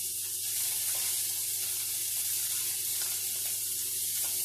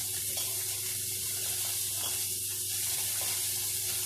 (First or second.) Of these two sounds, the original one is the first